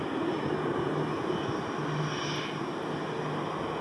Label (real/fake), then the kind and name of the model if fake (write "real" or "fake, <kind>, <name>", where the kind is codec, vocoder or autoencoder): real